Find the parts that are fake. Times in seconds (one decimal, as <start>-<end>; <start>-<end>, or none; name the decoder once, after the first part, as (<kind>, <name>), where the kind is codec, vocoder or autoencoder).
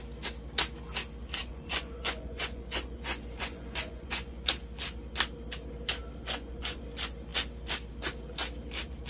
1.4-4.5 (vocoder, Vocos); 6.2-6.8